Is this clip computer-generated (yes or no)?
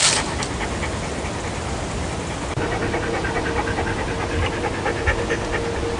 no